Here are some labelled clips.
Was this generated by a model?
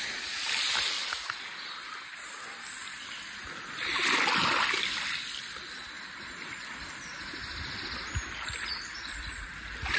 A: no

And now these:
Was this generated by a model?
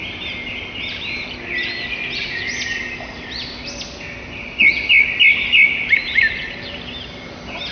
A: no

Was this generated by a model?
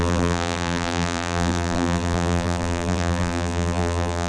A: yes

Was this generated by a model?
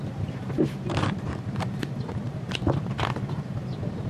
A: yes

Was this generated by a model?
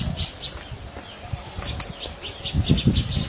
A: no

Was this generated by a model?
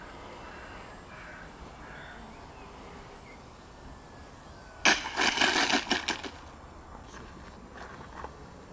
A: no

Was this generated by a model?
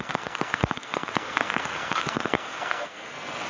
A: yes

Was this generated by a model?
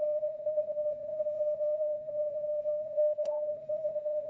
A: yes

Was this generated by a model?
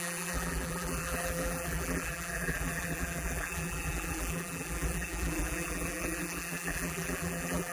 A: yes